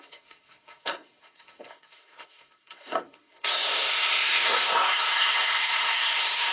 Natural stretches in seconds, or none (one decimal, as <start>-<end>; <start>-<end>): none